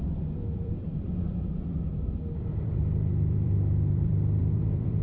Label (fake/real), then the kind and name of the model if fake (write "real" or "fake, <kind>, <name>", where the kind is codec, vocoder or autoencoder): fake, vocoder, BigVGAN v2